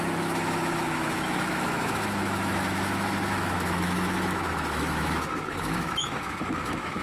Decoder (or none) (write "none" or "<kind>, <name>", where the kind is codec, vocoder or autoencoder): autoencoder, DAC-VAE